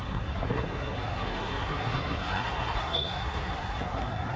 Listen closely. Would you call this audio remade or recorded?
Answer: remade